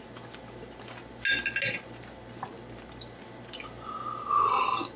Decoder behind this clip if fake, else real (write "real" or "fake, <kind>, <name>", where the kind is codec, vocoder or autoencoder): real